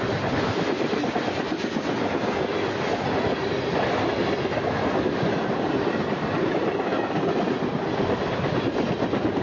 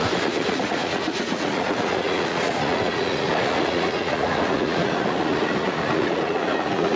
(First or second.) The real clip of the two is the first